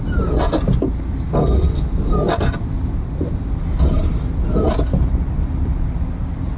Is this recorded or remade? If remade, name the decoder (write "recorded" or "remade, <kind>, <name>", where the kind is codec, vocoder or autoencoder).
recorded